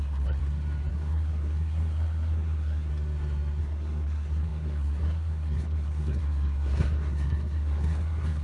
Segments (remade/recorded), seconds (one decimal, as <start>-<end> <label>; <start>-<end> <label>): 0.0-0.4 remade; 0.4-0.9 recorded; 0.9-2.9 remade; 2.9-3.6 recorded; 3.6-8.4 remade